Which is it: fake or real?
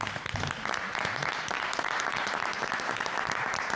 fake